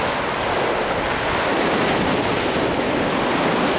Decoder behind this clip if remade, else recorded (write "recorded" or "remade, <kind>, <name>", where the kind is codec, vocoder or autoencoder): recorded